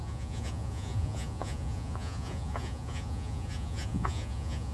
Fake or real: fake